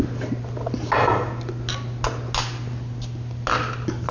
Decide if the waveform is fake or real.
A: real